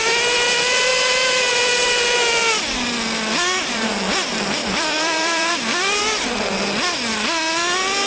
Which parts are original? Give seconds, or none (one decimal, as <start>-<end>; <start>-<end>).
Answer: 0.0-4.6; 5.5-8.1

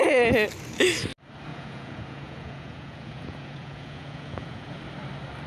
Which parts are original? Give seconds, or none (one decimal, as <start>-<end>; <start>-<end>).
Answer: 0.0-1.5; 4.8-5.5

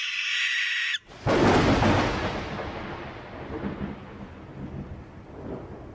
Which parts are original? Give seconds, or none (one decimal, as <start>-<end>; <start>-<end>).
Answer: 0.0-5.9

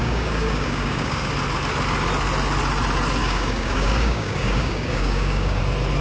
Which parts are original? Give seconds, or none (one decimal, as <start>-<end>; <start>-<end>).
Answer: 1.3-3.2; 5.6-6.0

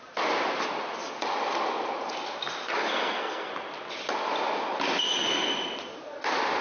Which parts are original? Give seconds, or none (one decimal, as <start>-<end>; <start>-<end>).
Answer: 0.0-2.8; 3.5-6.6